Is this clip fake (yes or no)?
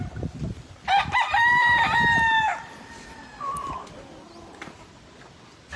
no